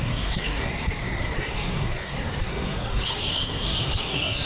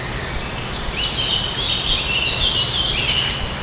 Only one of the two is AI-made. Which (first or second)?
first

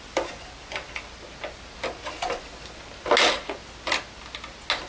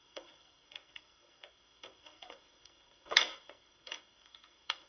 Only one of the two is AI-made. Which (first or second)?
second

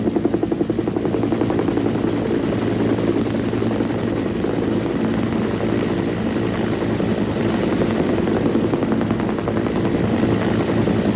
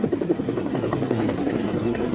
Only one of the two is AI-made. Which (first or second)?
second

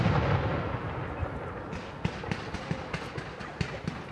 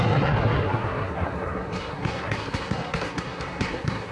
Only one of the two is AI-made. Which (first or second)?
second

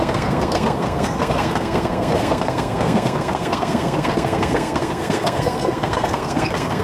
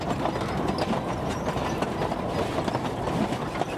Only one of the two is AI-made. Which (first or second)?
first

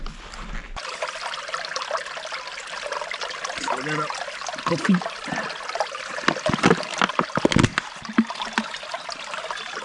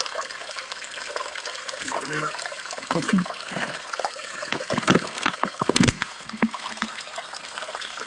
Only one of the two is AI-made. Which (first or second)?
second